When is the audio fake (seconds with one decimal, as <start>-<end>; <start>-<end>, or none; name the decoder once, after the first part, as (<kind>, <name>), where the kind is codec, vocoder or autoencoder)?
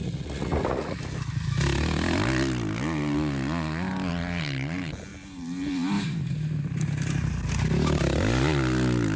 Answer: 0.0-1.0 (vocoder, Vocos)